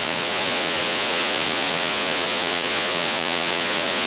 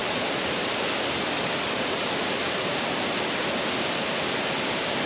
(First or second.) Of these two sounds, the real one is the second